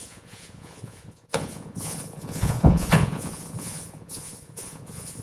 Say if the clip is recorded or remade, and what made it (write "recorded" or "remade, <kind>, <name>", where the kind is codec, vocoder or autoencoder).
remade, vocoder, Vocos